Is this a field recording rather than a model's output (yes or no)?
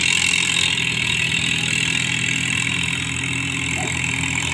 yes